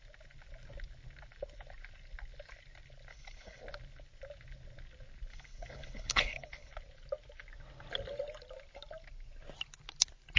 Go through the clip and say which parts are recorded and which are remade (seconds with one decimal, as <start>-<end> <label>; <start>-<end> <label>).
0.0-3.1 recorded; 3.1-3.6 remade; 3.6-5.3 recorded; 5.3-6.7 remade; 6.7-10.4 recorded